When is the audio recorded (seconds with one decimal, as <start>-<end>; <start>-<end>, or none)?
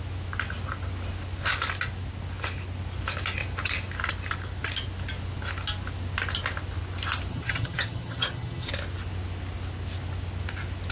0.0-7.3; 8.7-10.9